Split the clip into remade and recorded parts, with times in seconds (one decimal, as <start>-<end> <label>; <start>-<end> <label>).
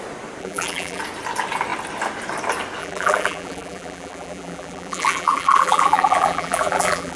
0.0-0.4 recorded; 0.4-1.0 remade; 1.0-2.8 recorded; 2.8-7.2 remade